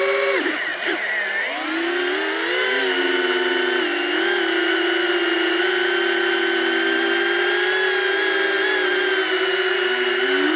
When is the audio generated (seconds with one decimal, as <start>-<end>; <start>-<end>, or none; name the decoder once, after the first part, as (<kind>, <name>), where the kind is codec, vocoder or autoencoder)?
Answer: none